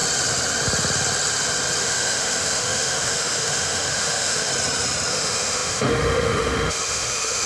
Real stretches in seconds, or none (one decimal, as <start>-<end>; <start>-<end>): 0.0-1.8; 4.5-5.1